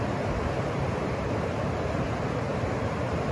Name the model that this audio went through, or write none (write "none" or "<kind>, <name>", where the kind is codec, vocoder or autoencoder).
none